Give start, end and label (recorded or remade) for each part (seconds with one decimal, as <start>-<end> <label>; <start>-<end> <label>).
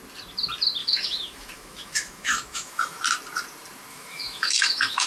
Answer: 0.0-0.8 recorded; 0.8-3.0 remade; 3.0-3.9 recorded; 3.9-5.1 remade